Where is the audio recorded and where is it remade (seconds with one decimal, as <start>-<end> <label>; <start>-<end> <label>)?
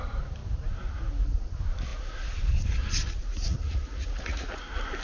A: 0.0-3.3 recorded; 3.3-4.5 remade; 4.5-5.0 recorded